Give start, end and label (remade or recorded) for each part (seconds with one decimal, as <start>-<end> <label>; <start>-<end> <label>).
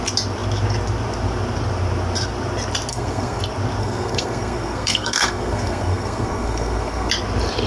0.0-2.9 recorded; 2.9-3.4 remade; 3.4-3.8 recorded; 3.8-7.1 remade; 7.1-7.7 recorded